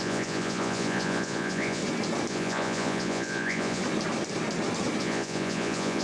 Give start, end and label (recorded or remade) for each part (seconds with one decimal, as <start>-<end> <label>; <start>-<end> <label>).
0.0-1.8 remade; 1.8-2.3 recorded; 2.3-3.8 remade; 3.8-5.0 recorded; 5.0-6.0 remade